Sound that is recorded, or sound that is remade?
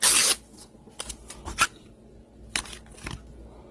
recorded